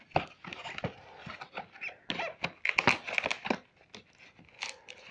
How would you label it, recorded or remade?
recorded